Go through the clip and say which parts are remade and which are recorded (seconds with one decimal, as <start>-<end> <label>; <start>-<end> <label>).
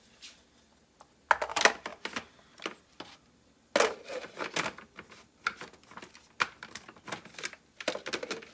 0.0-8.5 recorded